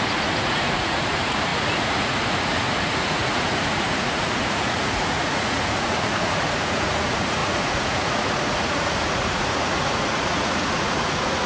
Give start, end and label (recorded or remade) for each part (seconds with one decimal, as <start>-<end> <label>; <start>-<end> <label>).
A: 0.0-11.5 remade